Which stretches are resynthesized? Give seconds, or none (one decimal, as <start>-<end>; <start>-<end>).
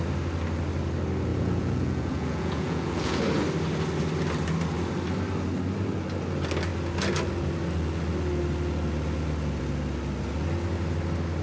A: 1.3-3.2